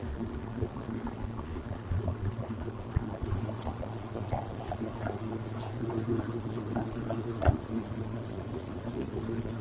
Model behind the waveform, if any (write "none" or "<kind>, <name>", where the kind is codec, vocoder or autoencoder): vocoder, Vocos